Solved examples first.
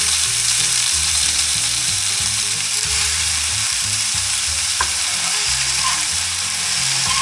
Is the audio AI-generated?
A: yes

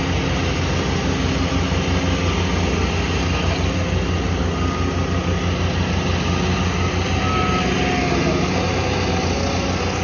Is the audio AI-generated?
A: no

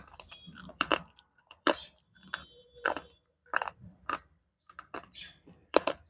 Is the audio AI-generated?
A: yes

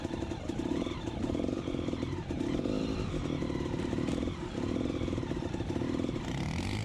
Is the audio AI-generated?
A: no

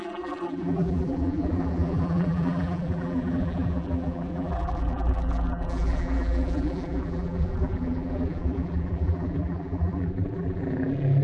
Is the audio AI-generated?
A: yes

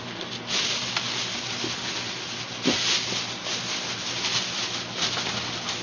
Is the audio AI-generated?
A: no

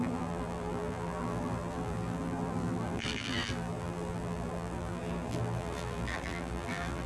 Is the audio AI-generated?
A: yes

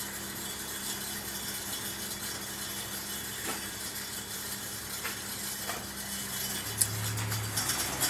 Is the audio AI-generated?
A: no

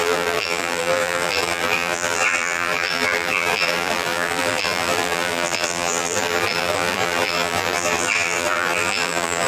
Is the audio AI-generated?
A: yes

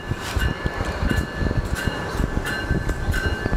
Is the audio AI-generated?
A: no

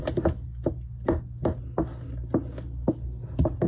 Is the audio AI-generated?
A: no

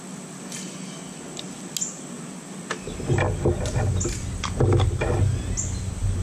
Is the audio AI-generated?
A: no